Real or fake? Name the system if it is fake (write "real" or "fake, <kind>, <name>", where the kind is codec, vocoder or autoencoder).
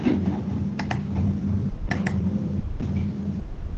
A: fake, vocoder, BigVGAN v2